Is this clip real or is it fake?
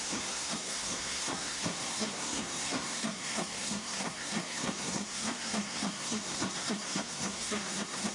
fake